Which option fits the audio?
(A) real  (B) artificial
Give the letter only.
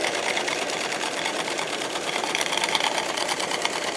B